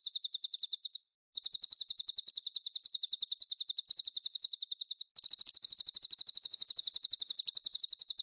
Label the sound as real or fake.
real